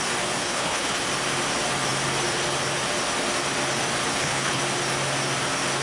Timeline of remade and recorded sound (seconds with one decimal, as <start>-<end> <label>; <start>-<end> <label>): 0.0-0.4 recorded; 0.4-1.0 remade; 1.0-4.1 recorded; 4.1-4.6 remade; 4.6-5.8 recorded